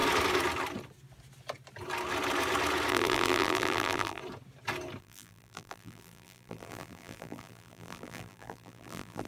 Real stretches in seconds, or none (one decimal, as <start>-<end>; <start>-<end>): 0.0-2.9; 4.2-5.0